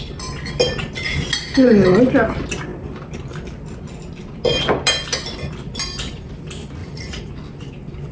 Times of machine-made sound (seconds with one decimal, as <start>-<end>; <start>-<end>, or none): 6.8-7.3